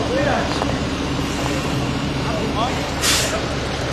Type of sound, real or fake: fake